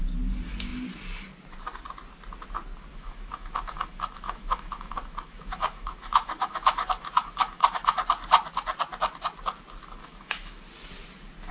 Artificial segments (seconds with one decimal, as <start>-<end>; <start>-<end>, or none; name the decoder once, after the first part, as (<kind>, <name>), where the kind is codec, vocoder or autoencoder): 2.9-8.0 (autoencoder, DAC-VAE); 10.0-10.6

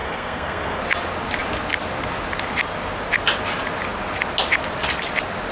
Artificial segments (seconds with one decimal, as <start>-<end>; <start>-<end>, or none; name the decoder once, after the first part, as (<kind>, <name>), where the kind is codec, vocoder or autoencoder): 0.0-0.8 (codec, SNAC)